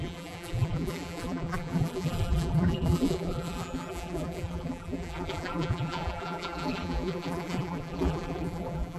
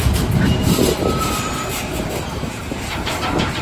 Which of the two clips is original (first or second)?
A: second